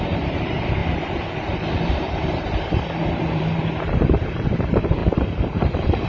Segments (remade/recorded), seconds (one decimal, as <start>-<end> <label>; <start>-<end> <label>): 0.0-6.1 remade